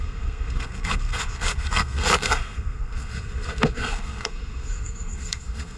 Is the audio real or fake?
fake